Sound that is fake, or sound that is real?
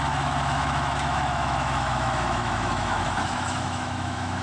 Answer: fake